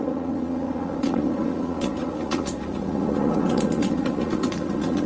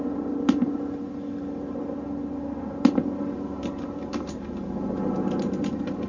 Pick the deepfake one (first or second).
first